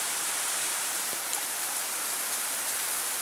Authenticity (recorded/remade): remade